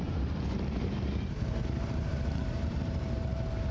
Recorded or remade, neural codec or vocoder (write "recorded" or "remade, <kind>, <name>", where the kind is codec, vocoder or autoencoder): remade, vocoder, BigVGAN v2